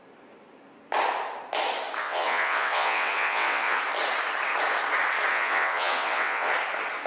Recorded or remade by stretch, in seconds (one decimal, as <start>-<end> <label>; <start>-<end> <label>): 0.0-2.0 recorded; 2.0-3.8 remade; 3.8-5.3 recorded; 5.3-6.5 remade; 6.5-7.1 recorded